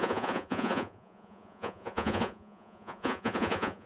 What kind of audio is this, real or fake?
fake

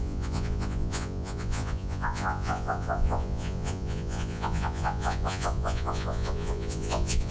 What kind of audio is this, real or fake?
fake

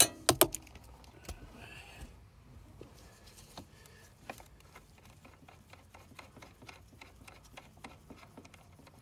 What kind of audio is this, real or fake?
real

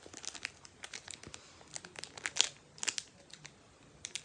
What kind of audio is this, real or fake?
real